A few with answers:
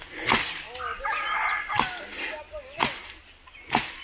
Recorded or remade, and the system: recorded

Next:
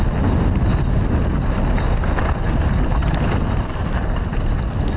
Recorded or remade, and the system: recorded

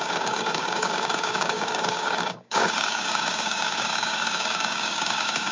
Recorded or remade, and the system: remade, codec, DAC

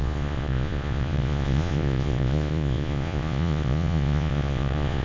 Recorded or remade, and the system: remade, vocoder, Vocos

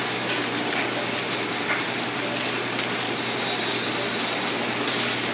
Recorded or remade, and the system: recorded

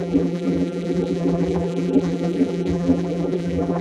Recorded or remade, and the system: remade, vocoder, BigVGAN v2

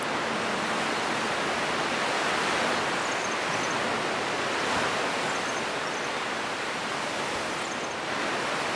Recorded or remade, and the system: recorded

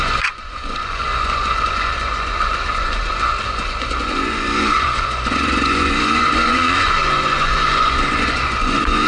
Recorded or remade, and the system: remade, vocoder, Vocos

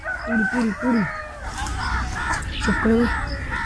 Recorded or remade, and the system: recorded